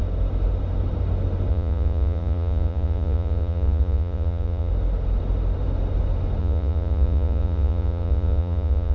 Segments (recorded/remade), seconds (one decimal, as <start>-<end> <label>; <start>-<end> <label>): 0.0-1.5 recorded; 1.5-4.7 remade; 4.7-6.4 recorded; 6.4-8.9 remade